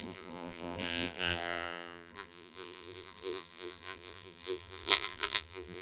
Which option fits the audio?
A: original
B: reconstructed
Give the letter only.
B